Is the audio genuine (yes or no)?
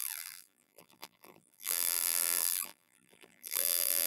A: no